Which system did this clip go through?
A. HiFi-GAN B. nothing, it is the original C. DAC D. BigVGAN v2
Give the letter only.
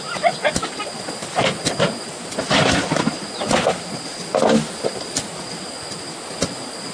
B